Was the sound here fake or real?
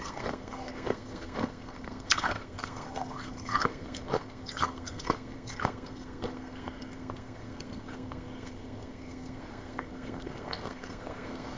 fake